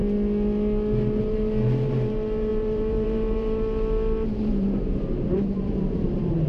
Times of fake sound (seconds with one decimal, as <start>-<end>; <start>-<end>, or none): 1.2-6.5